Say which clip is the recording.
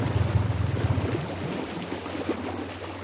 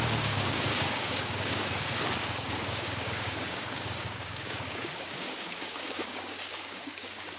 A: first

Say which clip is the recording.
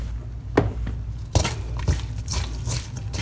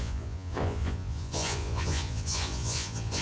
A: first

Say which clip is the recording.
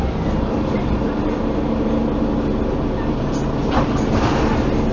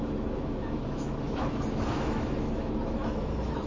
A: first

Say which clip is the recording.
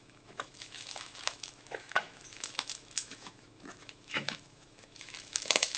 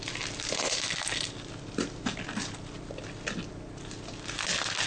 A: second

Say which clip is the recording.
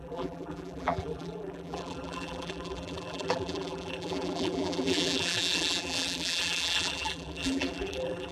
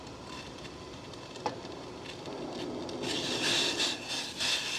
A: second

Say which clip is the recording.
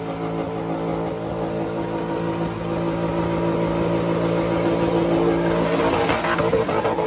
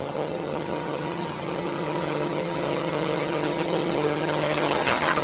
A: first